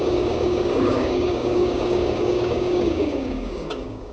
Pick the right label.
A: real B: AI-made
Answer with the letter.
B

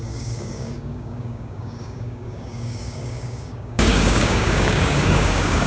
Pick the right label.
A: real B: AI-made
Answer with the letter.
B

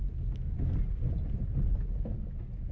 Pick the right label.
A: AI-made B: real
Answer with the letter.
B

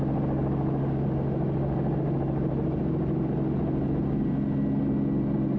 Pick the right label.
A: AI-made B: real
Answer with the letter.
B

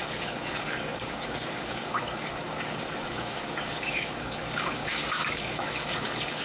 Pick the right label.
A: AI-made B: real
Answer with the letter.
A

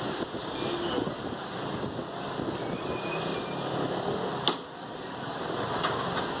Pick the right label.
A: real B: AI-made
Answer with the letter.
A